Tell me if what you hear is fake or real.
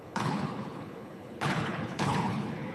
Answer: fake